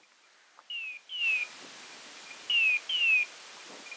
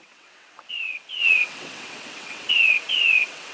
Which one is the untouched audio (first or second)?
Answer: first